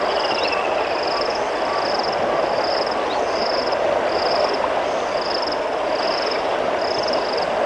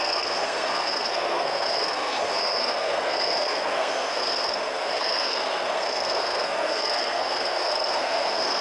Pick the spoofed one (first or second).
second